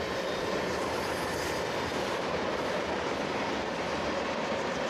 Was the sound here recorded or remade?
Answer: remade